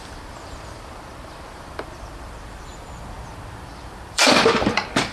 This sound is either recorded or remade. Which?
remade